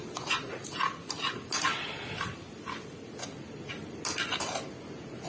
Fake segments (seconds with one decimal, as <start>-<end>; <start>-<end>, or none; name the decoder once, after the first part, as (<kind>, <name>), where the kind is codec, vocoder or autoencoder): 0.0-1.0 (vocoder, BigVGAN v2)